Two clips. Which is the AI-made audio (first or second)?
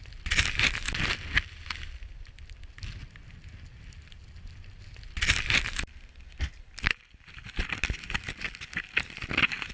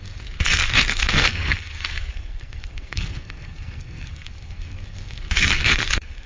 second